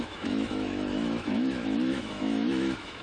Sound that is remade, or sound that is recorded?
remade